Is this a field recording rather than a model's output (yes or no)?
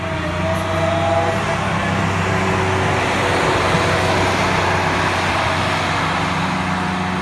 yes